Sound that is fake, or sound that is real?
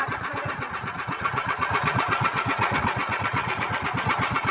fake